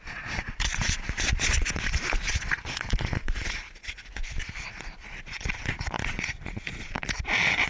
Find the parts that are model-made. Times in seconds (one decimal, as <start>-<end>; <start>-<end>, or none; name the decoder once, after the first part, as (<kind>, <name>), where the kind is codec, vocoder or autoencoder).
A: 0.0-4.0 (vocoder, Vocos); 4.6-7.7